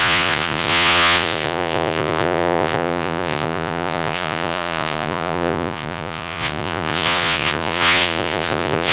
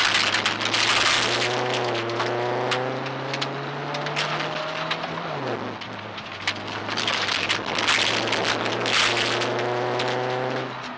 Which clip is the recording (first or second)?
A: second